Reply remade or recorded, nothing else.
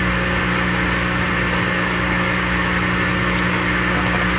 recorded